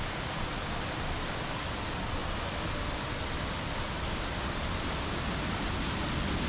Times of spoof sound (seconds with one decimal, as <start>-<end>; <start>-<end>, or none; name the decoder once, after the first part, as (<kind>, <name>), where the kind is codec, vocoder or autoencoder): none

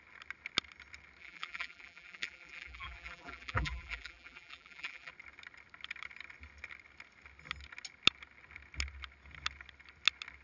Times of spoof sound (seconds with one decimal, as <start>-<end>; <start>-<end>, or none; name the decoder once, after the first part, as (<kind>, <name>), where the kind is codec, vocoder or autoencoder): 1.2-5.1 (vocoder, BigVGAN v2)

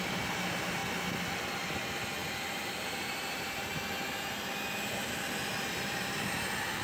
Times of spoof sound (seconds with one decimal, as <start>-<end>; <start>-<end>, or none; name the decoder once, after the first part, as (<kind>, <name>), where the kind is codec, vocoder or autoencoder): 0.0-0.8 (vocoder, BigVGAN v2); 1.7-3.7; 5.6-6.8

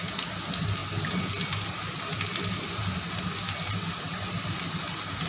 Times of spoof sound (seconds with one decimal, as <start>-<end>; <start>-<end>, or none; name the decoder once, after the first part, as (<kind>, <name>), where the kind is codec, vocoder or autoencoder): 0.8-2.8 (vocoder, BigVGAN v2)

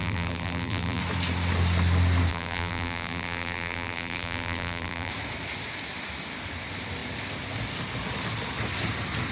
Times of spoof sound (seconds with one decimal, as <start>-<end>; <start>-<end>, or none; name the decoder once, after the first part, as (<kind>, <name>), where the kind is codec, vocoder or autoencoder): 0.0-1.0 (vocoder, BigVGAN v2); 2.3-5.1

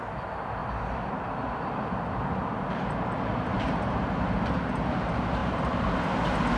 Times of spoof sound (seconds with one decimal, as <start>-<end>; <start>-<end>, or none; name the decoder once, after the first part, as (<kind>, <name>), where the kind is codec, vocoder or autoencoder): 0.6-4.6 (vocoder, BigVGAN v2); 5.4-6.0